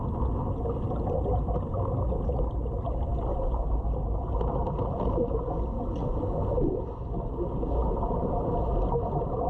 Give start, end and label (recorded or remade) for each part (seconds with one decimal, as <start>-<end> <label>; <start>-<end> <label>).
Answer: 0.0-9.5 recorded